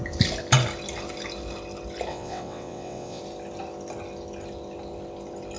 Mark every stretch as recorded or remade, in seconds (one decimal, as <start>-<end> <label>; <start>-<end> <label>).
0.0-2.1 recorded; 2.1-3.2 remade; 3.2-5.6 recorded